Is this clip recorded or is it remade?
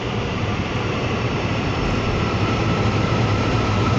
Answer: remade